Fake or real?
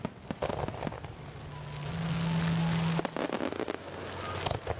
real